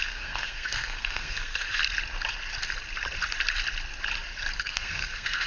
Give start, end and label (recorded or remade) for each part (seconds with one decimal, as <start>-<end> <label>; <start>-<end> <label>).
0.0-1.8 remade; 1.8-4.6 recorded; 4.6-5.5 remade